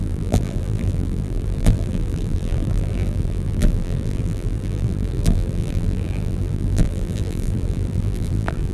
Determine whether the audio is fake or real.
fake